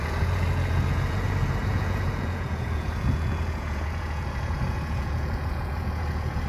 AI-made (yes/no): yes